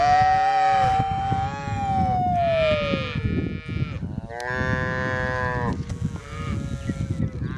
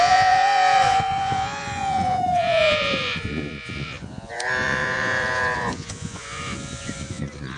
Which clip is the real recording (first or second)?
first